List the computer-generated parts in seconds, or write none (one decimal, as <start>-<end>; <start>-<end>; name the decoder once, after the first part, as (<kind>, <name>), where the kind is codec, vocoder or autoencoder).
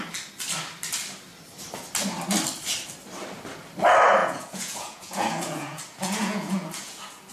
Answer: 4.2-7.3 (vocoder, Vocos)